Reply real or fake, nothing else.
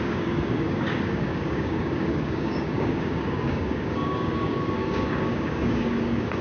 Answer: fake